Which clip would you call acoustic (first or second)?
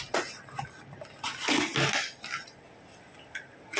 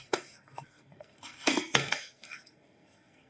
first